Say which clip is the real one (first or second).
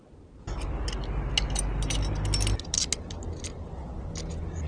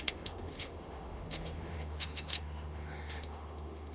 first